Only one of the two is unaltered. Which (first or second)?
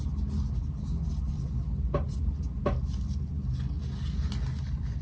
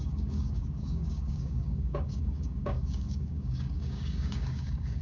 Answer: first